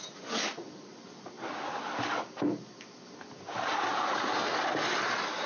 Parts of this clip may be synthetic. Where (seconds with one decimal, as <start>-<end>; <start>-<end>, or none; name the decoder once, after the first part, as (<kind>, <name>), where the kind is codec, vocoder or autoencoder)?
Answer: 0.0-0.9 (vocoder, Vocos); 3.9-4.4